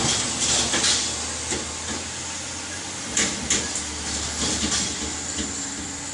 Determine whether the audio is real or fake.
real